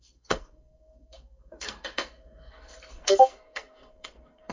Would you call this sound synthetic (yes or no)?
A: yes